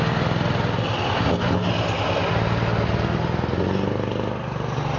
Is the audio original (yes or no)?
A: yes